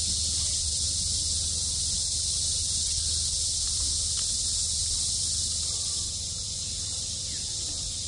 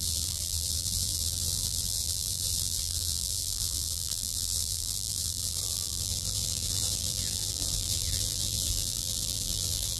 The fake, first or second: second